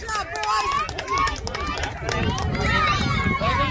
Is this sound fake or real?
real